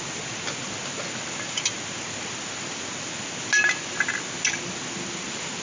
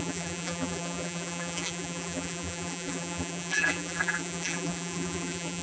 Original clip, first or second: first